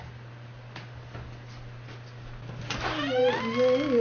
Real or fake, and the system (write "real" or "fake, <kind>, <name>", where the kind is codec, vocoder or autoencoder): real